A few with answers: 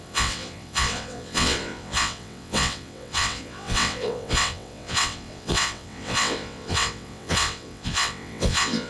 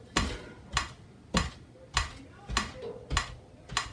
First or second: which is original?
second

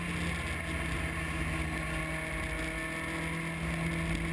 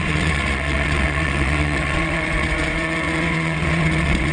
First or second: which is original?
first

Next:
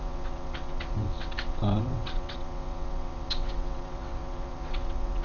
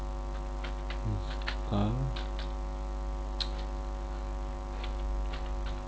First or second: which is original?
second